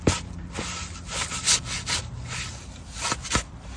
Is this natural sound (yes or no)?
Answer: yes